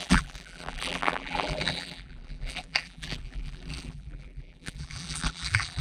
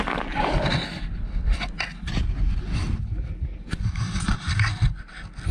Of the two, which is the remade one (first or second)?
first